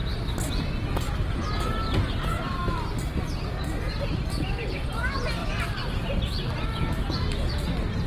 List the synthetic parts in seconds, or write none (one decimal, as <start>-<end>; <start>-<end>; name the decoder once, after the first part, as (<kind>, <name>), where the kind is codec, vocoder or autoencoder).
none